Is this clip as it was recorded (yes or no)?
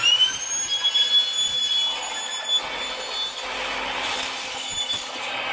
yes